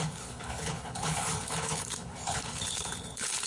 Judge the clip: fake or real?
fake